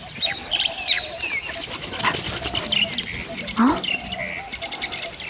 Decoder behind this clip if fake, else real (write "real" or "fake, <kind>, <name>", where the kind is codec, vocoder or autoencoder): real